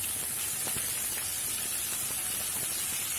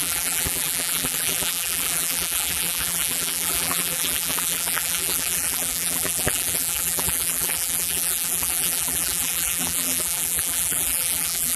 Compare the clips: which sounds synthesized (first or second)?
second